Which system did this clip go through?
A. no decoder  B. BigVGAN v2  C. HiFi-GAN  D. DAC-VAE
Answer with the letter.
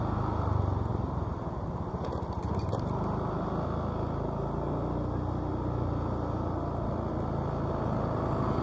A